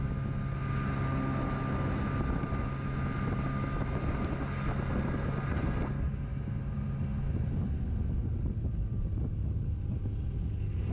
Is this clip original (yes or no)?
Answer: yes